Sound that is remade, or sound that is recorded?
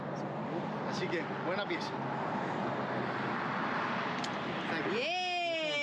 recorded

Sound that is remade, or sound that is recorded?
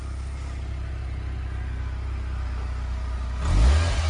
recorded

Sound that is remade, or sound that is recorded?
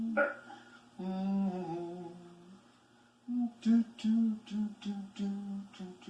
recorded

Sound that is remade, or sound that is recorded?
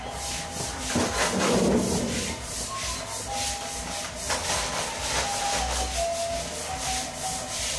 recorded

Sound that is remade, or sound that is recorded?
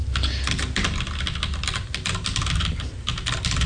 recorded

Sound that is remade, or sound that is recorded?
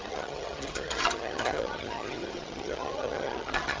remade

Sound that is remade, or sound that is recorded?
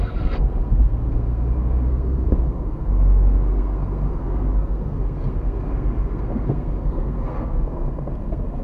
remade